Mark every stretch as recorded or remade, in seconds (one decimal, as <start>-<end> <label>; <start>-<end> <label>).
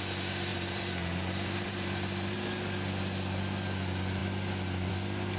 0.0-0.5 recorded; 0.5-2.4 remade; 2.4-5.4 recorded